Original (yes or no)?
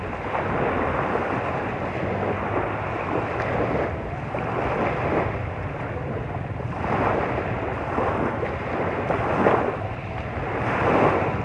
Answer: yes